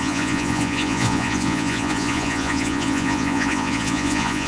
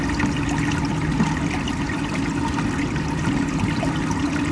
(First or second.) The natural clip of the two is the second